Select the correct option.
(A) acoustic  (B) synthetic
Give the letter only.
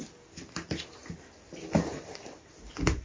A